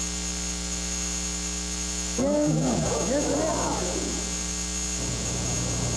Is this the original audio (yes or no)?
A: yes